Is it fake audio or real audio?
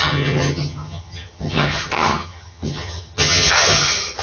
fake